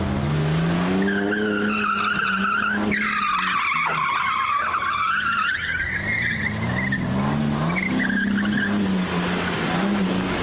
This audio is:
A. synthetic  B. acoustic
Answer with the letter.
B